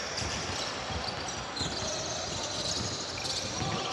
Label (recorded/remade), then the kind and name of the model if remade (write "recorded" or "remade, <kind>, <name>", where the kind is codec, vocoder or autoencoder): recorded